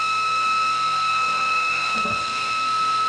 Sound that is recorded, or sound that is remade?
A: remade